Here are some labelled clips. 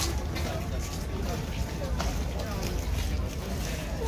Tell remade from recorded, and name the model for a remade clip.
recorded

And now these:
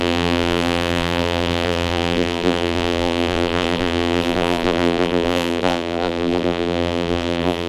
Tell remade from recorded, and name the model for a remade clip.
remade, vocoder, BigVGAN v2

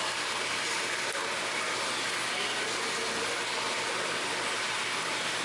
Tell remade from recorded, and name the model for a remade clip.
recorded